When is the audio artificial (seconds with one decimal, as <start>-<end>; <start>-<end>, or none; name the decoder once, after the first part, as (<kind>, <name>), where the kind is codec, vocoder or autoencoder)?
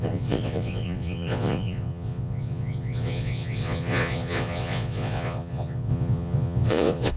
0.0-7.2 (vocoder, Vocos)